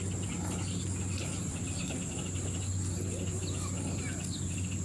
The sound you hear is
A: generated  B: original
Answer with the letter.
B